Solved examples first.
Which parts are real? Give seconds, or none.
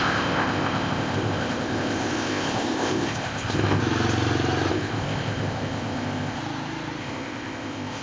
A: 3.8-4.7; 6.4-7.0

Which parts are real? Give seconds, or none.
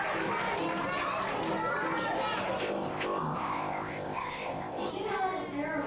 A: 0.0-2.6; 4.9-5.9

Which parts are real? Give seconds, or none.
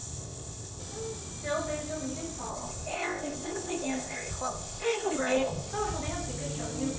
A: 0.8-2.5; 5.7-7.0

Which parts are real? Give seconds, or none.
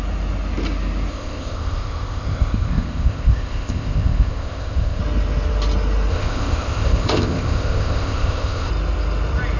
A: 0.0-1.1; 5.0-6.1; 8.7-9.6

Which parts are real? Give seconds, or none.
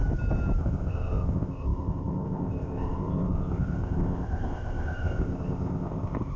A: 0.0-0.6